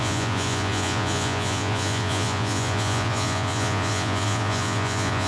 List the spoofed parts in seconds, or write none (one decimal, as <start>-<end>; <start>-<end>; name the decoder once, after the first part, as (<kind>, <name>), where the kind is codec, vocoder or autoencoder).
0.0-5.3 (vocoder, Vocos)